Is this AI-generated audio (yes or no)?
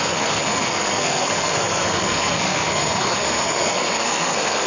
yes